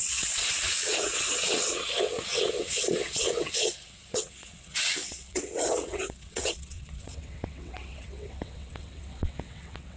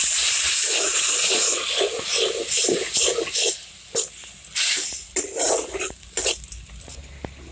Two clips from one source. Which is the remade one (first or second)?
first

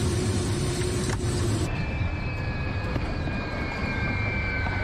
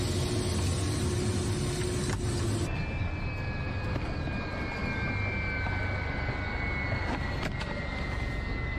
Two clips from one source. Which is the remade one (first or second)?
first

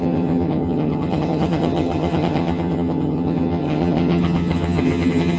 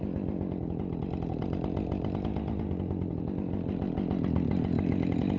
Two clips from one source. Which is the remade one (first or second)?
first